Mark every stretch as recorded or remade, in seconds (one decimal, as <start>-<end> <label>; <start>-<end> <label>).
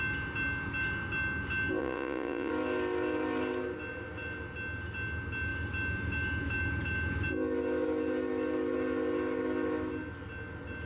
0.0-1.8 recorded; 1.8-2.5 remade; 2.5-10.9 recorded